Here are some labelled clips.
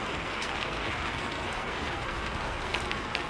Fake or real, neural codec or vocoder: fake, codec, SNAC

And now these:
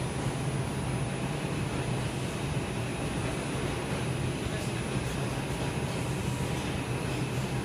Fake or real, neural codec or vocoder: real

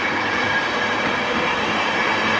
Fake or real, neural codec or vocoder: real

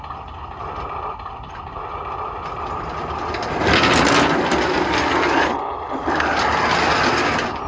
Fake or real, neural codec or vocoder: real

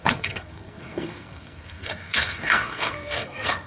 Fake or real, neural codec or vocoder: fake, codec, SNAC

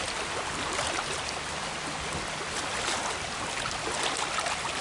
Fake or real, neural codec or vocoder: real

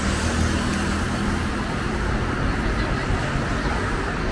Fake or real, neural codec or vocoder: real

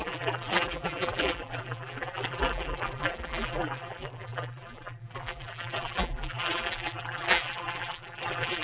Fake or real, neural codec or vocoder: fake, vocoder, BigVGAN v2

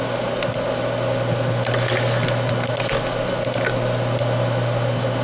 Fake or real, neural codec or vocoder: real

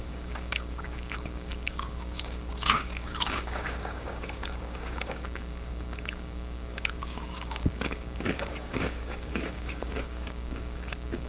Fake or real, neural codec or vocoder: fake, codec, DAC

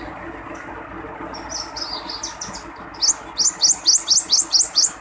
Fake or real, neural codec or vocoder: real